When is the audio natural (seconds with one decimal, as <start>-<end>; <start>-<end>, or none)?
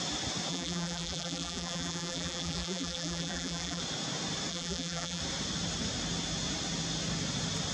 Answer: 0.0-0.5; 3.8-4.5; 5.2-7.7